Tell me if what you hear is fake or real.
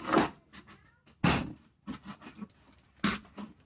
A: real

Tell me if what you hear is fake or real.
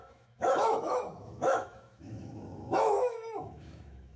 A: fake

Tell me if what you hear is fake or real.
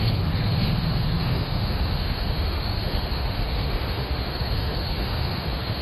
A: fake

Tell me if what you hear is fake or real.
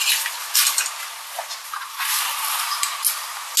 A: real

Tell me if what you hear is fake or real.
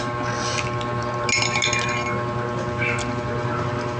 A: real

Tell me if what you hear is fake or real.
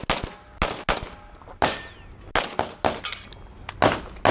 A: real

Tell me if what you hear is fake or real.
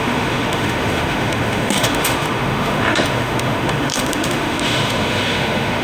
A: fake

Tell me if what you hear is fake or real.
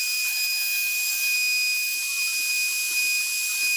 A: real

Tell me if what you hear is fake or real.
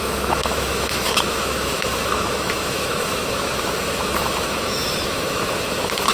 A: fake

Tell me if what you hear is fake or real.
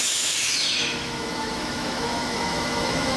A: fake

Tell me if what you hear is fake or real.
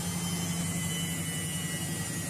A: real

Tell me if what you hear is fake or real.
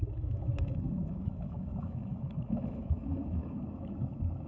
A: fake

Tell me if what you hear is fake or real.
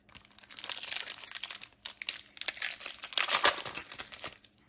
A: real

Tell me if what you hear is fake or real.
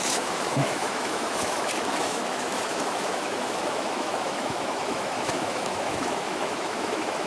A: fake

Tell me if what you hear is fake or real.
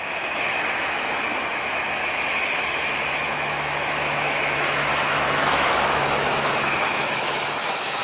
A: fake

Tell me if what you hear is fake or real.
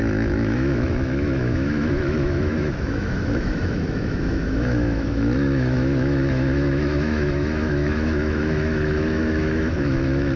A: fake